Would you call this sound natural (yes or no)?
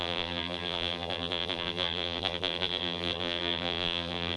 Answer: no